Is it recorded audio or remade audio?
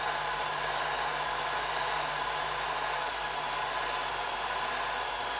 recorded